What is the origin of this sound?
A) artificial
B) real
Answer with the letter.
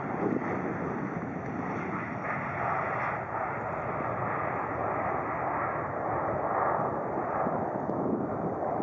B